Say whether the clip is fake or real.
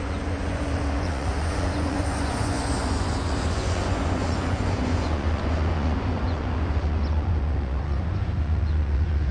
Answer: fake